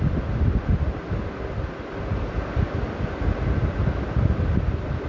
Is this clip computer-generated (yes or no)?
no